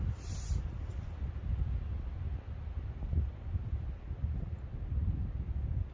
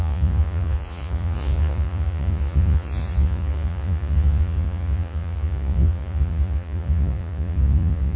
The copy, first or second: second